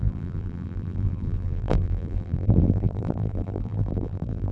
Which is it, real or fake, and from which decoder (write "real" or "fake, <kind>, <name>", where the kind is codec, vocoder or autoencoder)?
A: fake, vocoder, BigVGAN v2